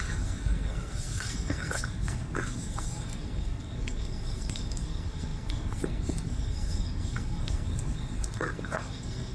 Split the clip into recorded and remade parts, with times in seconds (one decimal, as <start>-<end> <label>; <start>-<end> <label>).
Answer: 0.0-9.3 remade